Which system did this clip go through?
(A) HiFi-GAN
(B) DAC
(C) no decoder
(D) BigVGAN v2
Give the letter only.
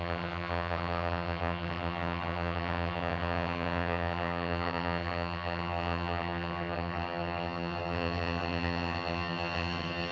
A